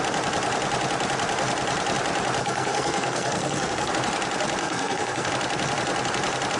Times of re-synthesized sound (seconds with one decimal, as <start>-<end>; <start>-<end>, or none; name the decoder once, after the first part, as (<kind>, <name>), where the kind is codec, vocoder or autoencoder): 2.4-3.9 (codec, SNAC); 4.6-5.3